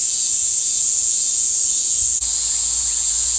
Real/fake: fake